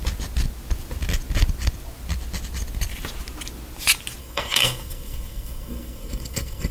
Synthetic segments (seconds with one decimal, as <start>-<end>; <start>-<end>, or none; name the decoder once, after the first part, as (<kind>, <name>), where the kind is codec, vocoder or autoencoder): 4.2-6.7 (codec, SNAC)